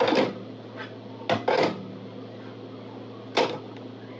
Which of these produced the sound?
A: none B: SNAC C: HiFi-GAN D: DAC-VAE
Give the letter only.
A